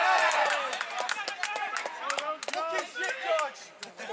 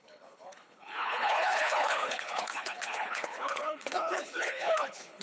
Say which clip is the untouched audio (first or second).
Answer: first